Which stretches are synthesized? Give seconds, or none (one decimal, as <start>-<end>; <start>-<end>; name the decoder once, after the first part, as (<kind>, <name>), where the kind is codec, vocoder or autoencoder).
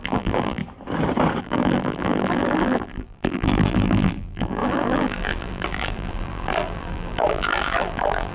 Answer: 0.0-0.6 (vocoder, BigVGAN v2); 1.4-8.3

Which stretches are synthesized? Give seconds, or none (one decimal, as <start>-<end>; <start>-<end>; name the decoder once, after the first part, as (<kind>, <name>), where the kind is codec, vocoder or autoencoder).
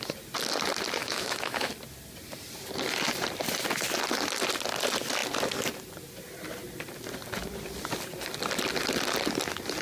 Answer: 1.0-1.7 (autoencoder, DAC-VAE)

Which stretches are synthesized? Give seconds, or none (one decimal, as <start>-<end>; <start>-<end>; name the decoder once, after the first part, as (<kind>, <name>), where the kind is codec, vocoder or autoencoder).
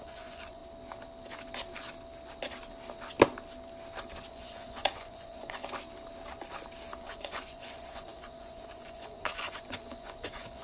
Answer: 0.0-0.6 (vocoder, Vocos); 4.3-5.6; 7.0-10.6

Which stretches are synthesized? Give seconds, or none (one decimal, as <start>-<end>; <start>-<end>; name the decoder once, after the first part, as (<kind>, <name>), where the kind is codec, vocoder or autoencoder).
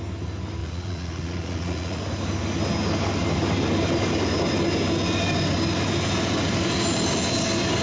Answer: 0.6-2.0 (vocoder, Vocos)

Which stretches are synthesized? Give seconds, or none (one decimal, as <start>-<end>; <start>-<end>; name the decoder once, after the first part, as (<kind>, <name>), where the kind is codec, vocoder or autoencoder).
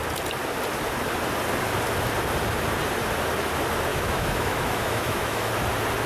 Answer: 3.9-5.5 (autoencoder, DAC-VAE)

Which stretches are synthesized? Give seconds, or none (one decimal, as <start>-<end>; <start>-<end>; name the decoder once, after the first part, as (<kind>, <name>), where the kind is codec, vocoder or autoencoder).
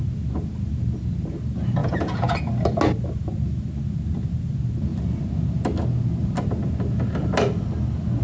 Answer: 1.8-2.4 (vocoder, Vocos)